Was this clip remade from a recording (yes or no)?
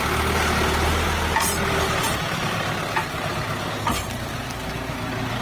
no